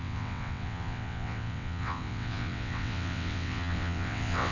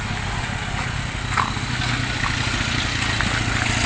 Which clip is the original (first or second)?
second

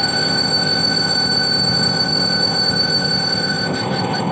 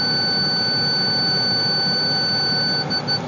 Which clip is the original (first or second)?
second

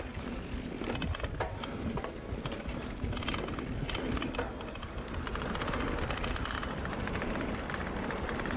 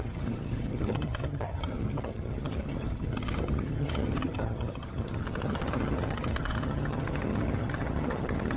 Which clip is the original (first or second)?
first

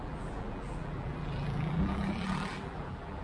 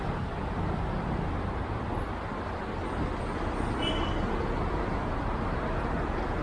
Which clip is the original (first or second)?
second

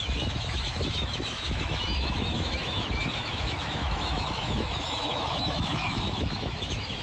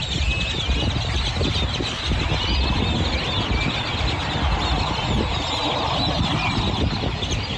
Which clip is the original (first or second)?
second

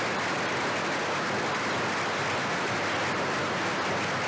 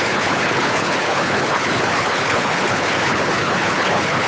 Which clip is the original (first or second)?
first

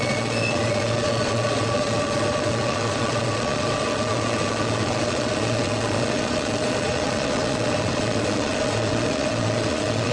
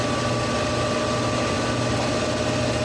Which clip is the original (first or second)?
second